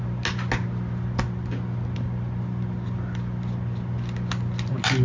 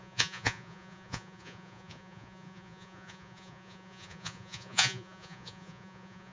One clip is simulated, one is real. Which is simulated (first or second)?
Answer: second